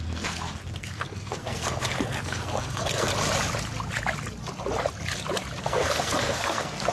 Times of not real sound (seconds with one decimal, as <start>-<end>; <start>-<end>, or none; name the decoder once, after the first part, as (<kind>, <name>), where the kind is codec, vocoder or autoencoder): 0.0-3.1 (codec, SNAC); 5.6-6.9